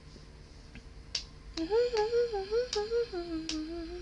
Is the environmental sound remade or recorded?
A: recorded